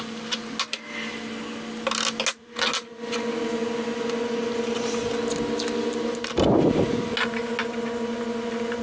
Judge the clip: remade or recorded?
recorded